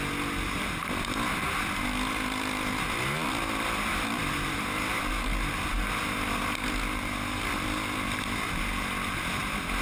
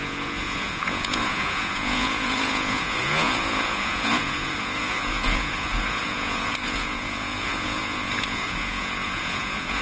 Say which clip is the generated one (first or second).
second